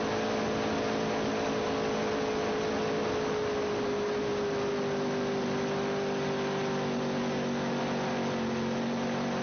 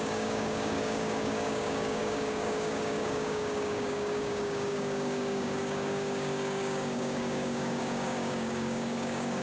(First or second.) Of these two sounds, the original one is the first